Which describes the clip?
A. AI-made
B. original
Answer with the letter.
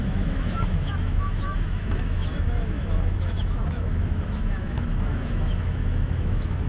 A